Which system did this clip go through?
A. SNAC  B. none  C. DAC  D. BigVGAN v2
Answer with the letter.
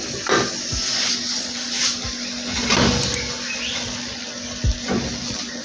B